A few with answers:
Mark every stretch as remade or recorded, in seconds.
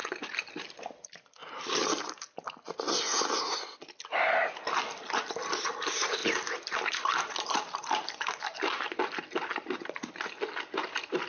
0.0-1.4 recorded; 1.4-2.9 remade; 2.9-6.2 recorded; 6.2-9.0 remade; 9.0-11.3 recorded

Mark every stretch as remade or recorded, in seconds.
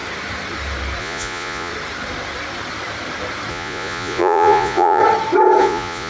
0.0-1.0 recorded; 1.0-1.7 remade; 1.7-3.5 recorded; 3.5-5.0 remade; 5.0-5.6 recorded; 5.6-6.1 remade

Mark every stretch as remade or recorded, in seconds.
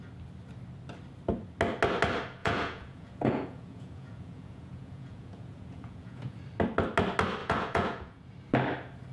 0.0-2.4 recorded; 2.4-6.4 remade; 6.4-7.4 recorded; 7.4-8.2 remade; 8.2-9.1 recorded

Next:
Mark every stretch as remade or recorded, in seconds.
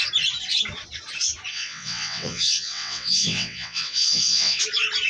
0.0-1.5 recorded; 1.5-4.6 remade; 4.6-5.1 recorded